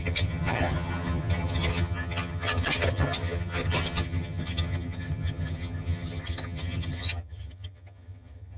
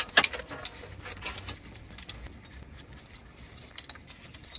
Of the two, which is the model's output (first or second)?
first